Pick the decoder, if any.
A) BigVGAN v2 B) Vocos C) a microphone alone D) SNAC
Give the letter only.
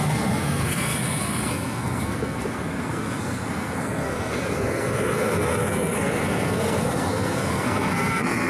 D